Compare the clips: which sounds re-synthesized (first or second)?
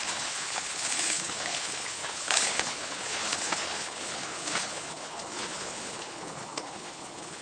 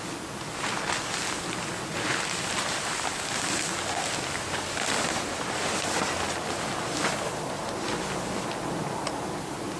first